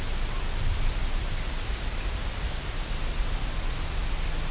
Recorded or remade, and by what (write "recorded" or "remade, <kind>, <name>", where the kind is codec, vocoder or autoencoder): recorded